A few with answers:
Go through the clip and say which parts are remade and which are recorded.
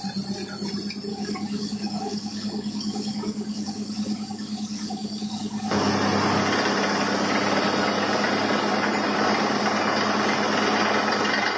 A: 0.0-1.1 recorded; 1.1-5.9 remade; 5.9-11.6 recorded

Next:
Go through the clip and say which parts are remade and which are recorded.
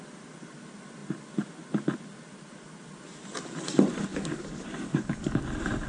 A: 0.0-4.1 recorded; 4.1-5.4 remade; 5.4-5.9 recorded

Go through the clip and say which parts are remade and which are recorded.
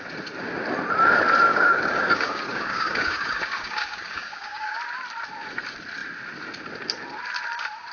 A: 0.0-1.5 recorded; 1.5-4.8 remade; 4.8-7.9 recorded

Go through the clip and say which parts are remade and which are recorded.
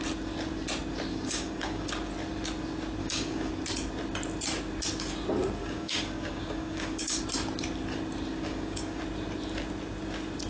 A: 0.0-1.1 recorded; 1.1-1.9 remade; 1.9-3.0 recorded; 3.0-3.5 remade; 3.5-5.6 recorded; 5.6-7.2 remade; 7.2-8.5 recorded; 8.5-9.0 remade; 9.0-10.5 recorded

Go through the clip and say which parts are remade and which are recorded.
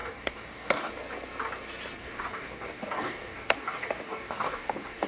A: 0.0-0.9 remade; 0.9-2.0 recorded; 2.0-5.1 remade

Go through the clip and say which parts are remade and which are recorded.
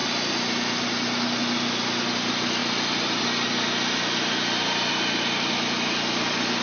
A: 0.0-6.6 recorded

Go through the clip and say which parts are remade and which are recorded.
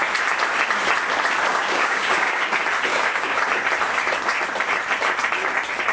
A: 0.0-1.5 recorded; 1.5-2.5 remade; 2.5-2.9 recorded; 2.9-3.4 remade; 3.4-5.9 recorded